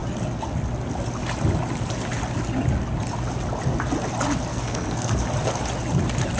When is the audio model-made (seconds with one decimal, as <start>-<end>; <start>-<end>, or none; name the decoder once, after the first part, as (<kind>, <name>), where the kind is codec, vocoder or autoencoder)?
4.5-5.1 (codec, SNAC)